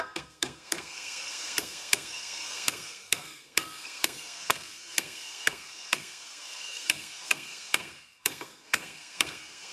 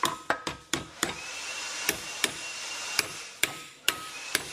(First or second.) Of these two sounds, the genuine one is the second